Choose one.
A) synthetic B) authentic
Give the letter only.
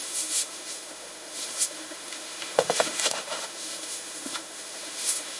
A